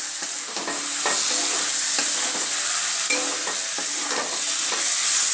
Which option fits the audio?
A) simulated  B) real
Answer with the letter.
B